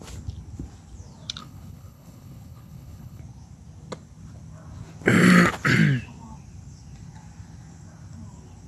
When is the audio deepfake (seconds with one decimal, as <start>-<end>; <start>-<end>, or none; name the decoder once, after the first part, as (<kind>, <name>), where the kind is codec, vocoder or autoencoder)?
1.4-3.2 (codec, HILCodec)